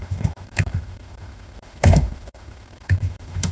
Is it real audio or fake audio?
fake